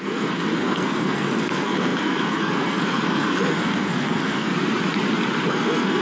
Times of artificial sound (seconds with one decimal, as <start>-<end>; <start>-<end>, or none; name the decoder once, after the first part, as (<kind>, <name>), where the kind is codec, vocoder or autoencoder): 0.0-4.5 (codec, SNAC); 5.5-6.0